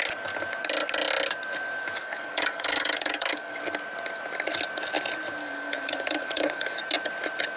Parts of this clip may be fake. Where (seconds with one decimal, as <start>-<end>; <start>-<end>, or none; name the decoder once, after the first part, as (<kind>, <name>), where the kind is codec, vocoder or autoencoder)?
2.0-3.6 (codec, DAC); 5.4-6.8